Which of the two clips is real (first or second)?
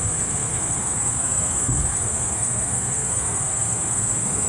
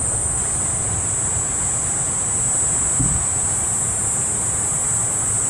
second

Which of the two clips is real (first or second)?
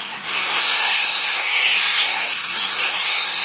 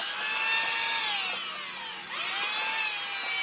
second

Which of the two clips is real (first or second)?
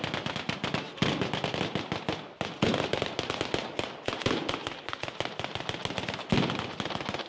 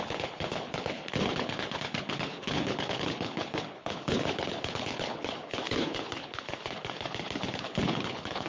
first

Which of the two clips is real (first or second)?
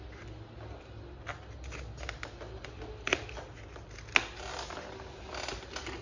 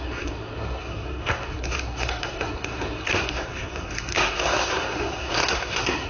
first